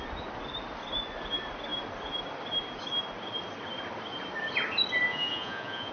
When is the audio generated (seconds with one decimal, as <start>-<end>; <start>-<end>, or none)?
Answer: 5.1-5.9